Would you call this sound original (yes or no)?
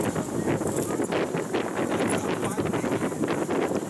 yes